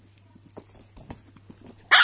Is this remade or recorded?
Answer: recorded